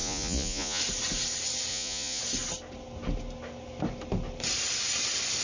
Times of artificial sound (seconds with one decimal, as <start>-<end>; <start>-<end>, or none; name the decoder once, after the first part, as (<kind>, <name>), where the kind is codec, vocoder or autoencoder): 0.0-0.8 (vocoder, Vocos); 1.7-2.2